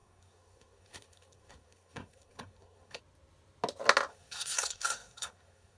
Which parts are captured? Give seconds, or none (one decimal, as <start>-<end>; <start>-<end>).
3.0-4.1

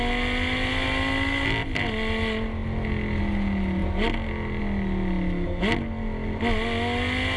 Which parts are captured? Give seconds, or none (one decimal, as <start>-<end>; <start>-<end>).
0.0-7.4

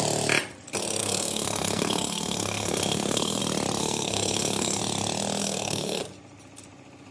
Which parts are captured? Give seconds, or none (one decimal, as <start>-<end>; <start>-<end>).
0.0-1.0; 3.4-3.8; 4.8-5.4; 6.0-7.1

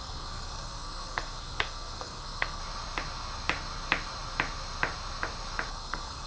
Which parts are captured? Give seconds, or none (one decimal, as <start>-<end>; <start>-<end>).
2.6-5.7

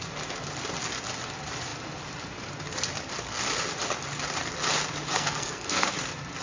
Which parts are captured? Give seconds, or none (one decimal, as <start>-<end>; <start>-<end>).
0.0-5.1; 5.9-6.4

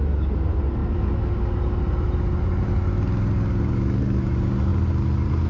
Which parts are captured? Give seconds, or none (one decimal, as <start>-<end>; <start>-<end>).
0.0-5.5